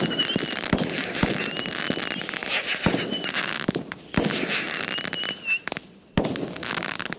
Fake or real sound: real